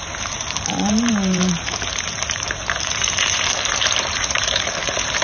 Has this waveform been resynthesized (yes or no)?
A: yes